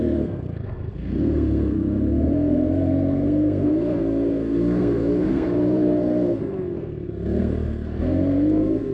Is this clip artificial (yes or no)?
yes